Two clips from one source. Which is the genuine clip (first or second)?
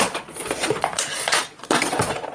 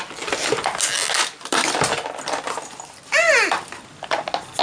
second